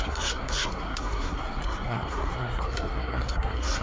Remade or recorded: remade